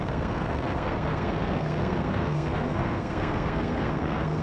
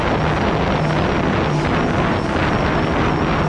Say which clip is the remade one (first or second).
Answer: first